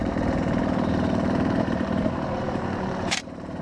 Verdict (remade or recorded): remade